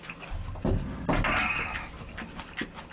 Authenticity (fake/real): real